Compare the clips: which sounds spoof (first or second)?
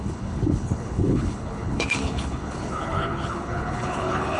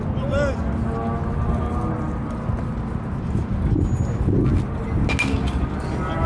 first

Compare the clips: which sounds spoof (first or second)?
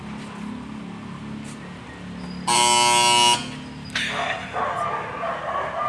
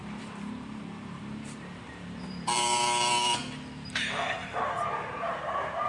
second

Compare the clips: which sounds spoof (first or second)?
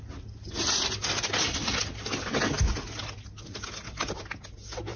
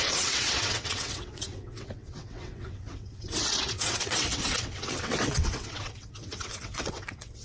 second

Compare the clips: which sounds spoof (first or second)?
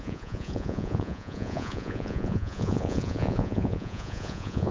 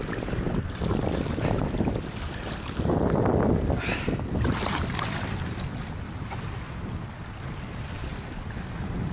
first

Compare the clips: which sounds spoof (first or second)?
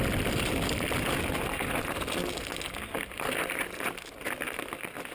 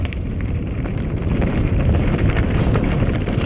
second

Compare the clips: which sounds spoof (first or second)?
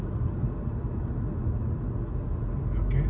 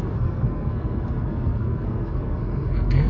second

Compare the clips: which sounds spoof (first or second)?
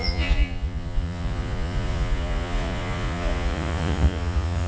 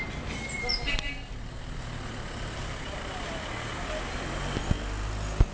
first